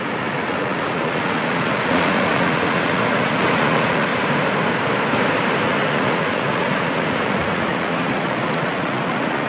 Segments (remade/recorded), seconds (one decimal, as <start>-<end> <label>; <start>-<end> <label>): 0.0-4.1 remade; 4.1-5.6 recorded; 5.6-9.5 remade